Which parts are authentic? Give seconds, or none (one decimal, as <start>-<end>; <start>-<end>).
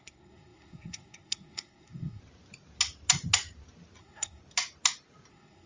2.2-4.0; 4.4-5.3